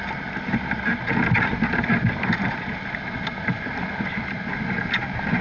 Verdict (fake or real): real